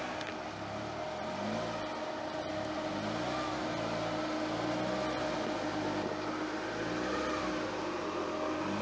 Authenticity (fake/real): real